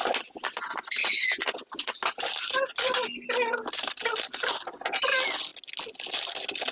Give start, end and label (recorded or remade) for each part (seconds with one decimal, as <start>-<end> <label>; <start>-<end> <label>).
0.0-6.7 recorded